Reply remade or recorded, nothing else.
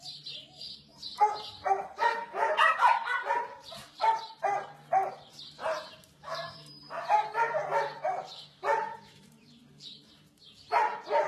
remade